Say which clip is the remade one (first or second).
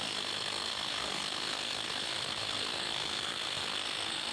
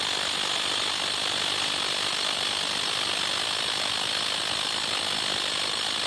first